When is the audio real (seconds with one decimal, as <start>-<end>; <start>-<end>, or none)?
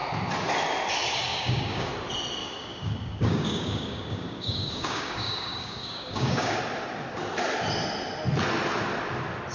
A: 0.0-1.3; 1.9-2.4; 6.6-9.5